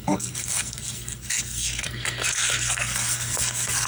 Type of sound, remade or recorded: remade